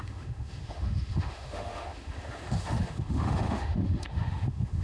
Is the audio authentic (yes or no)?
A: no